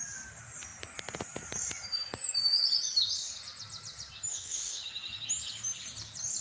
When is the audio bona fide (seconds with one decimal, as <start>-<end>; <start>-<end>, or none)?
0.0-4.3; 4.8-6.4